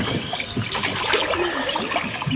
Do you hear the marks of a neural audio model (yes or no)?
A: no